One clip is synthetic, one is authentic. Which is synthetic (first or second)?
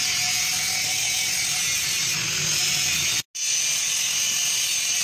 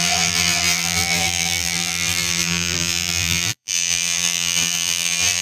second